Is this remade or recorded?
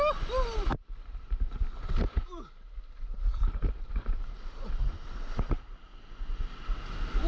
recorded